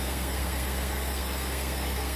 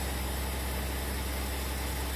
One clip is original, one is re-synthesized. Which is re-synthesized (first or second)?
first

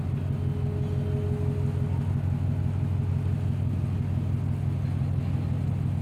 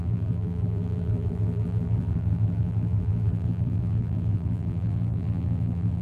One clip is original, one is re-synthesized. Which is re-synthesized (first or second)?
second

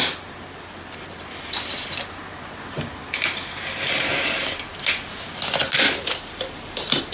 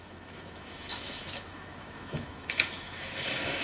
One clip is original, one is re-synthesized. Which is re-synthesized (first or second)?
second